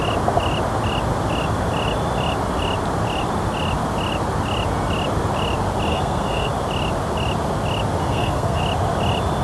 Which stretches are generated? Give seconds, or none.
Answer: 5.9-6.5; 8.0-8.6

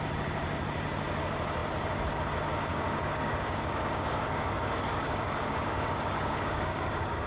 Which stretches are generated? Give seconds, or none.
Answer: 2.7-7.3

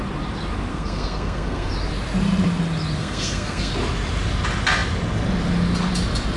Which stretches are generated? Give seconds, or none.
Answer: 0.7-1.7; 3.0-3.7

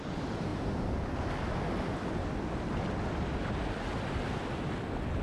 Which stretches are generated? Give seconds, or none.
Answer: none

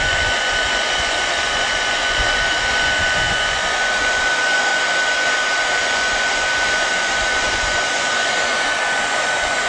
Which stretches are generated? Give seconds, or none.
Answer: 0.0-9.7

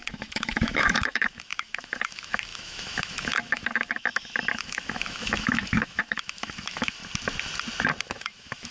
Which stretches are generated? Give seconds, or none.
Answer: 0.0-7.0; 8.0-8.7

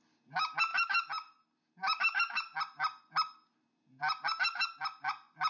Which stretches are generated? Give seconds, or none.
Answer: none

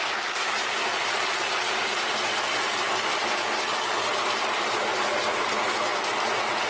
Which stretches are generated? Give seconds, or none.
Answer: none